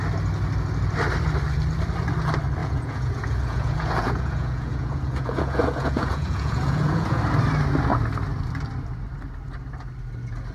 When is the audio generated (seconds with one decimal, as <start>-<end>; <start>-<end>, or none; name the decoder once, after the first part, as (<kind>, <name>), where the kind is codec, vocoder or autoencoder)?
2.6-7.2 (vocoder, Vocos)